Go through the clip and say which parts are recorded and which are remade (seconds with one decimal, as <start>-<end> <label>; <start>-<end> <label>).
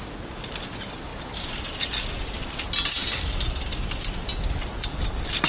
0.0-5.5 recorded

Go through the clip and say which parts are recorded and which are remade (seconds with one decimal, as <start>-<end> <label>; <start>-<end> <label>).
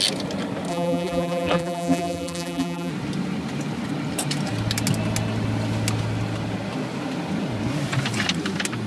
0.0-0.7 recorded; 0.7-2.9 remade; 2.9-8.9 recorded